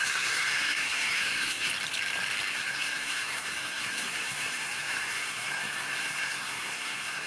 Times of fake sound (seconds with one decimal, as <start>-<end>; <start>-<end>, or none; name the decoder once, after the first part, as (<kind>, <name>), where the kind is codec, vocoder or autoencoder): 0.0-1.7 (codec, SNAC); 2.5-7.3